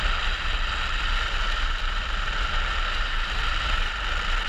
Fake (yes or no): no